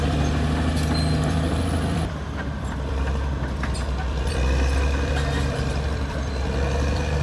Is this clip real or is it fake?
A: fake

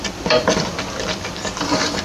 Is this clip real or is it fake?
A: fake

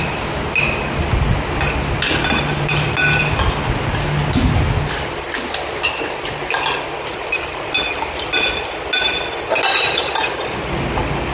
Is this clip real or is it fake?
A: real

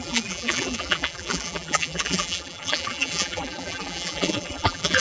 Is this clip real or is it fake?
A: fake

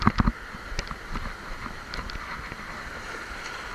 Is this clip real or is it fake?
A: fake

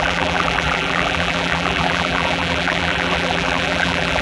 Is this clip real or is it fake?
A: fake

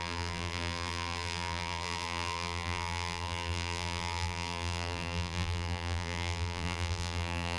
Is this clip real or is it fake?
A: fake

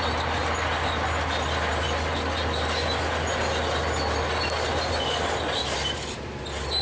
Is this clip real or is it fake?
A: real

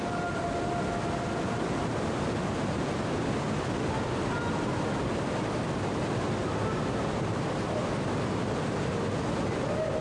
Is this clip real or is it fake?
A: real